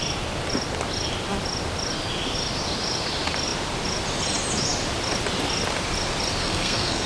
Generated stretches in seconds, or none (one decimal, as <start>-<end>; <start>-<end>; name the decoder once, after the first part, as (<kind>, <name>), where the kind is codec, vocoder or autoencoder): 6.4-7.1 (codec, SNAC)